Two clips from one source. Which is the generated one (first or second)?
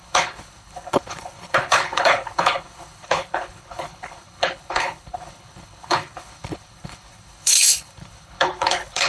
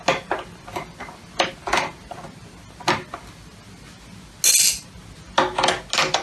first